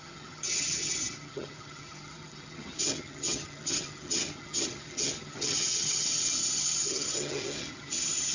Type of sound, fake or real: fake